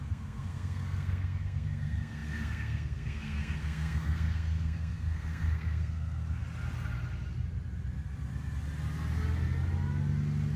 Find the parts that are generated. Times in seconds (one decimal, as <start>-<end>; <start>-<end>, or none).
0.0-6.4